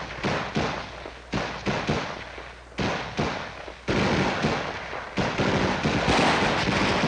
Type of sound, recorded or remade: recorded